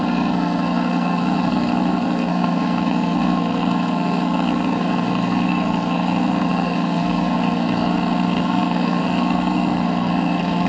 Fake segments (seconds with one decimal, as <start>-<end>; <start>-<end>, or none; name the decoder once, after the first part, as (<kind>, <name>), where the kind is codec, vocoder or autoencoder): 0.0-10.7 (codec, SNAC)

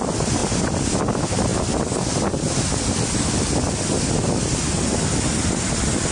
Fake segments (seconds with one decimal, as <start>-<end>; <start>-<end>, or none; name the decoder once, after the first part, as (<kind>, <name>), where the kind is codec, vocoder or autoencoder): none

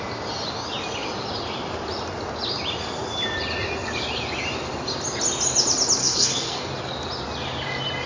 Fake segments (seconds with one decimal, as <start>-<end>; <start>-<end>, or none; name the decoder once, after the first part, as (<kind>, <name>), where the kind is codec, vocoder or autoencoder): 6.0-6.7 (codec, SNAC)

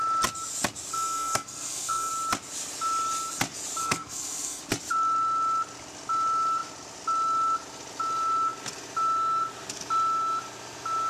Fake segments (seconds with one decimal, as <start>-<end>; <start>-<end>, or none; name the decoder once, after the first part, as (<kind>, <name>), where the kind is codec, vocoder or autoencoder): 0.9-2.1 (codec, SNAC); 3.8-4.6